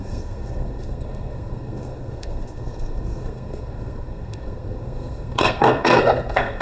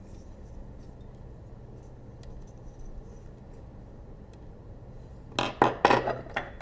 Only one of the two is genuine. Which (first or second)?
second